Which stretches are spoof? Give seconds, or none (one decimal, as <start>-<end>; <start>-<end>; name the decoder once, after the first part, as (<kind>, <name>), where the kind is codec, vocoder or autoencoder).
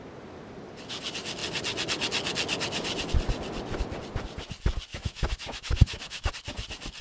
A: 4.9-6.3 (autoencoder, DAC-VAE)